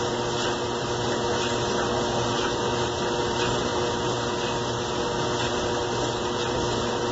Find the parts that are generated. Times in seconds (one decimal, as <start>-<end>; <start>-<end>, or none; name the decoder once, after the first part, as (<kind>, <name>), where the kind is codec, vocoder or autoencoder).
none